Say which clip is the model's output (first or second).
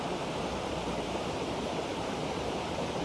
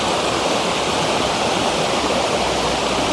first